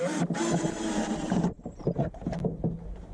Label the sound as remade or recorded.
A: remade